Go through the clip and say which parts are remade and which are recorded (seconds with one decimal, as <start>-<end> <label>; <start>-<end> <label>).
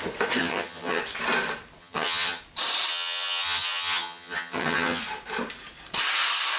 0.0-0.4 recorded; 0.4-1.0 remade; 1.0-1.8 recorded; 1.8-2.4 remade; 2.4-2.9 recorded; 2.9-5.0 remade; 5.0-6.6 recorded